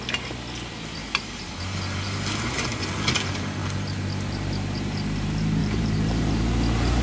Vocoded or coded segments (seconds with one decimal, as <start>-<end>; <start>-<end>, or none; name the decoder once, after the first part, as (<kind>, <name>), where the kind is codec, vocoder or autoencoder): 1.0-1.5 (vocoder, BigVGAN v2); 5.6-6.3